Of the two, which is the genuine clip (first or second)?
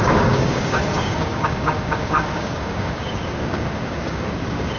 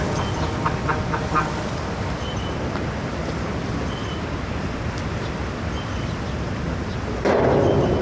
second